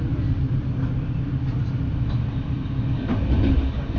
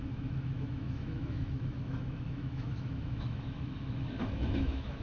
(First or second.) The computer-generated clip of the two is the second